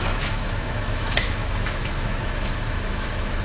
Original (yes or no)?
no